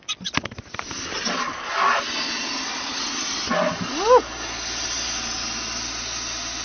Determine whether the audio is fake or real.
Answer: real